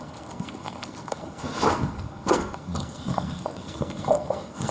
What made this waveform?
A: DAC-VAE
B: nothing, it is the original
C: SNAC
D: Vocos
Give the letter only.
C